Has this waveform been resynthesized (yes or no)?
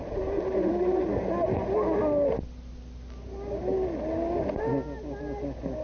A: no